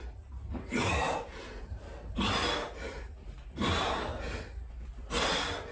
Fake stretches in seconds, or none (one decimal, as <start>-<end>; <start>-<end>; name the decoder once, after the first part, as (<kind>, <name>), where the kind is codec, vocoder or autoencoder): 1.0-1.8 (vocoder, BigVGAN v2)